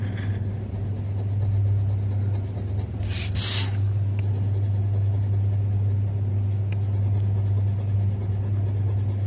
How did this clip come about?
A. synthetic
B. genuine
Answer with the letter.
B